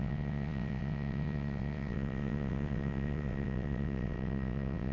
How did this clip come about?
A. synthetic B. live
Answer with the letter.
A